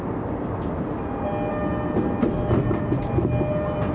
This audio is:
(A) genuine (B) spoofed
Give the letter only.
A